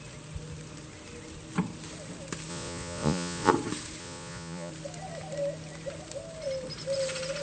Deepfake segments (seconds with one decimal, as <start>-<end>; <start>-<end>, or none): 2.5-3.5; 4.0-4.7